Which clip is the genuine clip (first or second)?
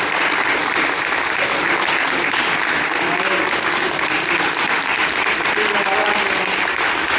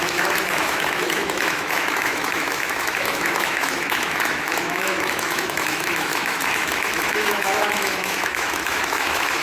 first